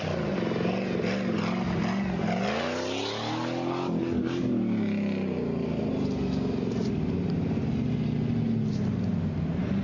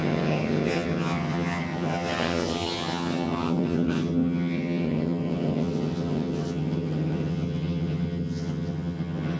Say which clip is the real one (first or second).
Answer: first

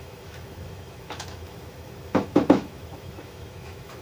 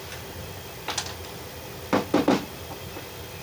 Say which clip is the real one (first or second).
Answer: second